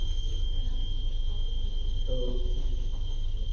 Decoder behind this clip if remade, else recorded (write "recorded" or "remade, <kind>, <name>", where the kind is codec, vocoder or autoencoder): remade, autoencoder, DAC-VAE